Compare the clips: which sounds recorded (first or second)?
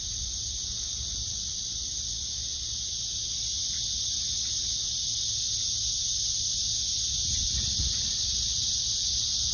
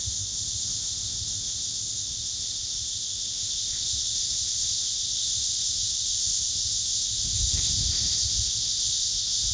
first